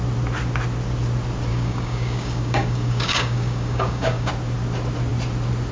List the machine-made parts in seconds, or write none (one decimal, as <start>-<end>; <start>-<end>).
1.5-4.3